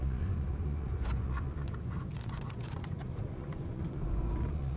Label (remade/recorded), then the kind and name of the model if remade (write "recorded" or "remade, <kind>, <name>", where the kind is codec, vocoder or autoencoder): remade, vocoder, Vocos